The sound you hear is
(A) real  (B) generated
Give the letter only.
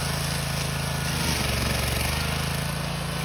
A